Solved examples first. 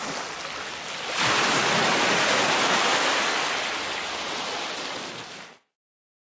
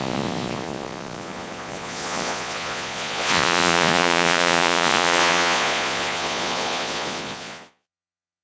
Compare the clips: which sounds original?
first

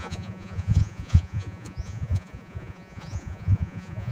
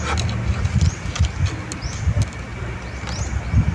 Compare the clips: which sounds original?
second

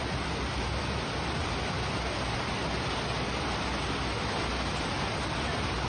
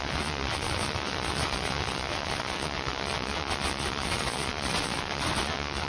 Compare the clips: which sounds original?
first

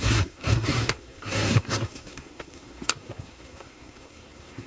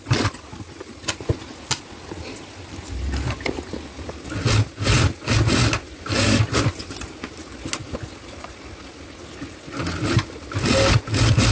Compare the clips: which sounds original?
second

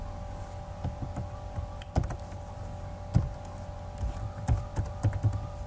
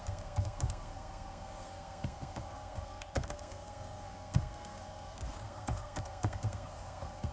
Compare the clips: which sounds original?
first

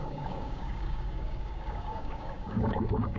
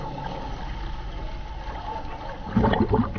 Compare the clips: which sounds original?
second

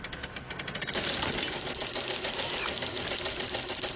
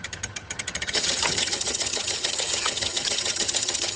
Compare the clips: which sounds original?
first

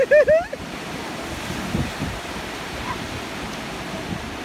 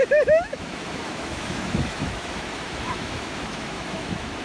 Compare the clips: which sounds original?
first